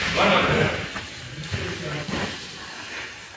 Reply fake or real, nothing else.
fake